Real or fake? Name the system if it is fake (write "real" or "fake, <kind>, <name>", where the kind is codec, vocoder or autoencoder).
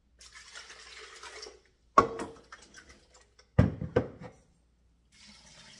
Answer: real